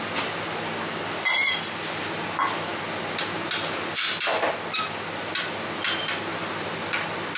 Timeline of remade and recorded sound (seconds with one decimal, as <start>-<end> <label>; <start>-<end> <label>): 0.0-7.4 recorded